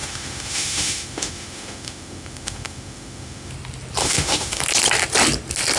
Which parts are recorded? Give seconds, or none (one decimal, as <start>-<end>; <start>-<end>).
3.5-4.0; 4.6-5.8